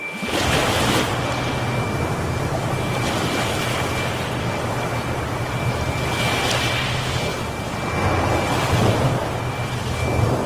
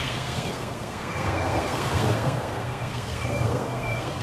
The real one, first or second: first